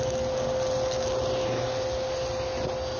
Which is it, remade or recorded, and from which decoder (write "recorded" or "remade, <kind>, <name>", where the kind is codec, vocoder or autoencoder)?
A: recorded